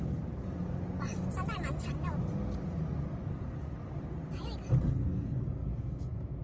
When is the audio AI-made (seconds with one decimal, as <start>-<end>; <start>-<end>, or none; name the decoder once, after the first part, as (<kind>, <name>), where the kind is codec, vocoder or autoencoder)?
5.6-6.4 (autoencoder, DAC-VAE)